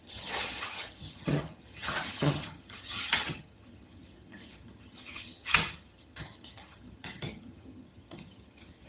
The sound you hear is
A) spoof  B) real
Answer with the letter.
A